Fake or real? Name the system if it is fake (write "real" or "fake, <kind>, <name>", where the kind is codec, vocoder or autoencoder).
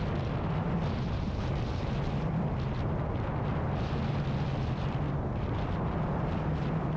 real